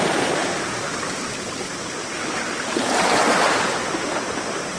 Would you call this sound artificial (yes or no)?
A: yes